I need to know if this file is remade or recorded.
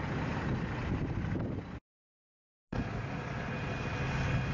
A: recorded